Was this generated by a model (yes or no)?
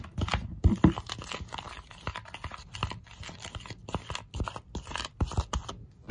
no